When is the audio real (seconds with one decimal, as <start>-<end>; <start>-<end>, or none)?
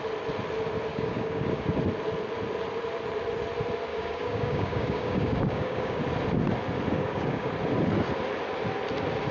0.0-0.9; 1.8-3.9; 6.0-6.9; 7.5-9.3